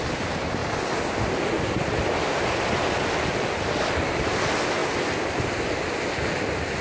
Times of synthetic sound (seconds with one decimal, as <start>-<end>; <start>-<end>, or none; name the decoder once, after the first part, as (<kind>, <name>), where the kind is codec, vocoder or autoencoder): none